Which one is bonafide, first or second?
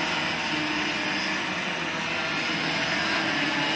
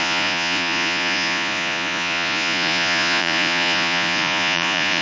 first